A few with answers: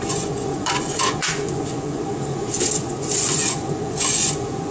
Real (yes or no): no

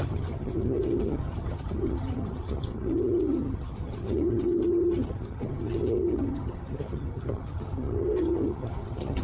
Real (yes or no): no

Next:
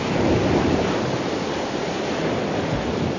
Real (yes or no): yes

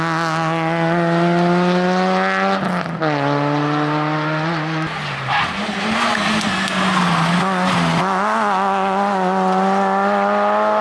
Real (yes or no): yes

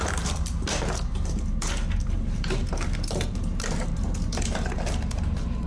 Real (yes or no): no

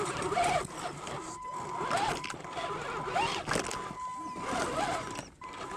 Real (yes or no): yes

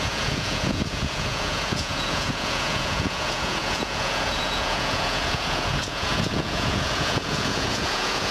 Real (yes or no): no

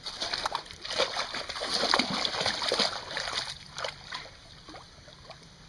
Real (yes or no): yes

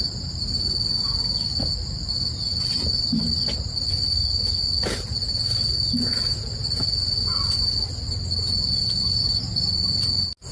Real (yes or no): yes